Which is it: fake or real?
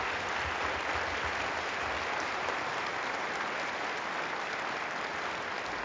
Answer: real